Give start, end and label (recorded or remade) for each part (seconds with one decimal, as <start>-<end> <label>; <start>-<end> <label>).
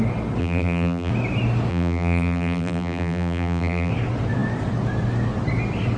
0.0-0.4 recorded; 0.4-1.1 remade; 1.1-1.7 recorded; 1.7-3.9 remade; 3.9-6.0 recorded